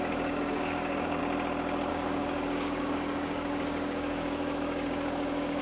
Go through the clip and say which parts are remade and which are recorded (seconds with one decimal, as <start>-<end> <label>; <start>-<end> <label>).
0.0-1.2 remade; 1.2-1.9 recorded; 1.9-5.6 remade